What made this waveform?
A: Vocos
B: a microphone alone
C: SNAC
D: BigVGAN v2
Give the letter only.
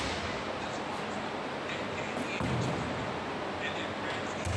B